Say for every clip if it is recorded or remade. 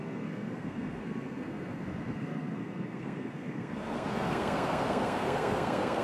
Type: remade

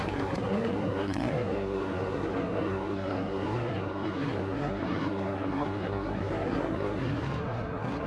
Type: remade